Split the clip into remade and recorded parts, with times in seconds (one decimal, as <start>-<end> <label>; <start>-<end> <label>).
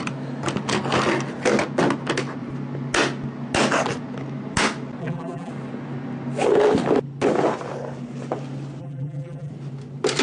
0.0-5.0 recorded; 5.0-5.5 remade; 5.5-8.8 recorded; 8.8-9.5 remade; 9.5-10.2 recorded